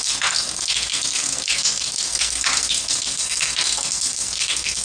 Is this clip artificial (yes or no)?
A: yes